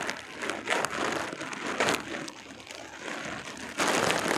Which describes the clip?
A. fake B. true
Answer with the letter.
B